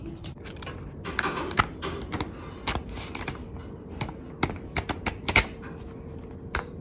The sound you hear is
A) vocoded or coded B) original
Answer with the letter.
B